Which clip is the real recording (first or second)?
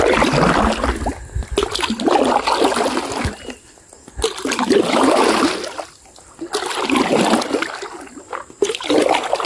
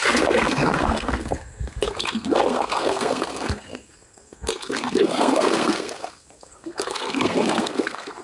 first